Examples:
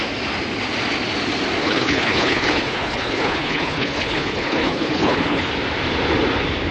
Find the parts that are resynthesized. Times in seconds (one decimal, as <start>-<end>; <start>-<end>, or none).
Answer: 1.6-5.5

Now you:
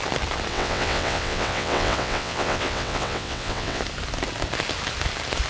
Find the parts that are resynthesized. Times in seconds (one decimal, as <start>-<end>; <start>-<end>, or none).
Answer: 0.5-3.8

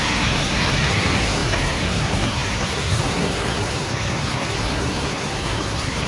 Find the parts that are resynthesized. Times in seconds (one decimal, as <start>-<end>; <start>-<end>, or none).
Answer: 0.0-6.1

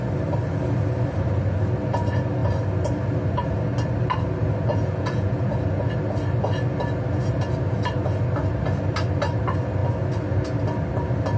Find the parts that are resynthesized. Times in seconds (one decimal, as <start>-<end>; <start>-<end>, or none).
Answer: 4.7-5.5

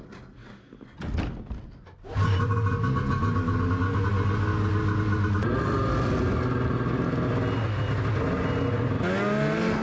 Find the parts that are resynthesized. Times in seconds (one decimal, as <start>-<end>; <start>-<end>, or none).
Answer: none

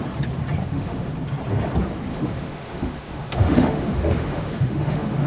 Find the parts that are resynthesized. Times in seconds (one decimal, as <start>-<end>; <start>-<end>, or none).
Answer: 0.6-1.1; 2.1-5.3

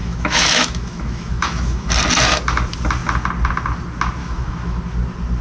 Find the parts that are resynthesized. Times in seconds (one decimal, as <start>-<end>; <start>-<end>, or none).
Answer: 0.0-1.9; 4.2-4.8

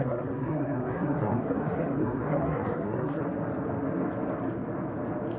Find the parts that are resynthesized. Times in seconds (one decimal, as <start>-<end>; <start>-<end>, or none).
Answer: 0.0-3.2